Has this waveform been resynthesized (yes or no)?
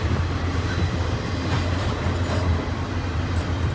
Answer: no